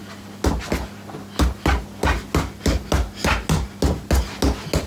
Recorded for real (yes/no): yes